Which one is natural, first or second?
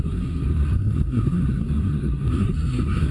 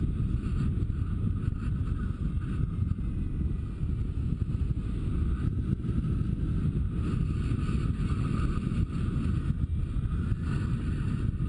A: second